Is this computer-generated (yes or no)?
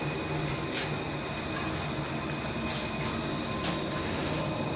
no